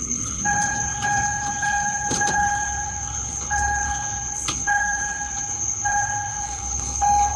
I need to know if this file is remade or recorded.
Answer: remade